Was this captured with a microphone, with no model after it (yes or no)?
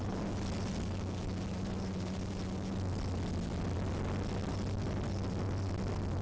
yes